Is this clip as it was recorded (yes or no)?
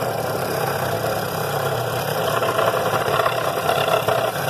no